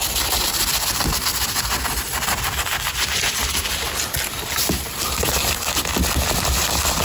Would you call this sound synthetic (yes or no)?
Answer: no